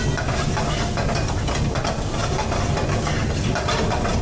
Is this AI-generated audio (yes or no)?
no